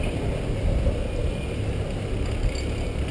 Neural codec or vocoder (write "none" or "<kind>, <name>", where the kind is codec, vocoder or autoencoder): none